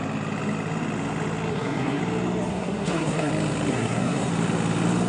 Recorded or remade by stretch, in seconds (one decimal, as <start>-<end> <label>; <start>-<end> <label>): 0.0-1.5 recorded; 1.5-2.0 remade; 2.0-2.5 recorded; 2.5-3.3 remade; 3.3-3.7 recorded; 3.7-4.3 remade; 4.3-5.1 recorded